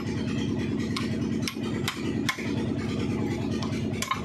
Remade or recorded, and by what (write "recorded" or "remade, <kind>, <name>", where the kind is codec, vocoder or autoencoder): recorded